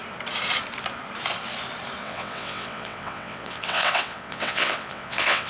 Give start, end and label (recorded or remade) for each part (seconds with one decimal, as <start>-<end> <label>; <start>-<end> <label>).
0.0-2.0 recorded; 2.0-5.5 remade